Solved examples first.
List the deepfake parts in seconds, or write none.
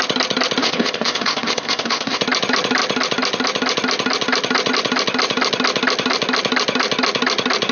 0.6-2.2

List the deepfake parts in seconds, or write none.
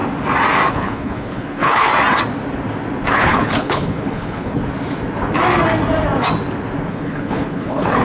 0.7-1.9; 3.1-4.6; 6.9-8.0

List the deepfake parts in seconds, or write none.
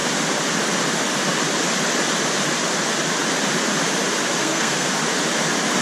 4.4-4.9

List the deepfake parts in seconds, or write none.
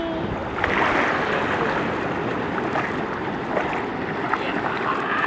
none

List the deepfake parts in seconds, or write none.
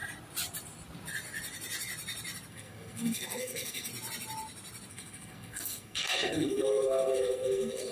2.5-3.9; 4.9-7.9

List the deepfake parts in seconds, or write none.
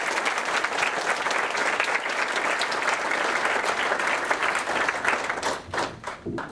none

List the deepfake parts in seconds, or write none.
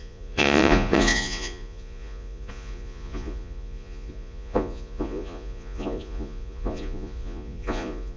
0.0-8.2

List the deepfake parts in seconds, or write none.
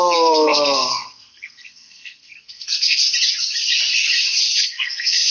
0.0-3.0; 4.4-5.3